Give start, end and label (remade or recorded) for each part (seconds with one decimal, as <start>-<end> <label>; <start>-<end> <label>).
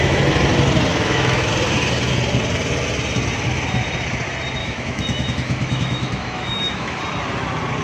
0.0-0.9 recorded; 0.9-1.5 remade; 1.5-4.6 recorded; 4.6-7.0 remade; 7.0-7.8 recorded